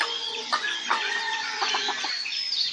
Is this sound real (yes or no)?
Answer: no